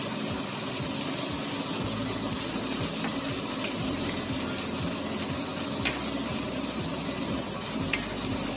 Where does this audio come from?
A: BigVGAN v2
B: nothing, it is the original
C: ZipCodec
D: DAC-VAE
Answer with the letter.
B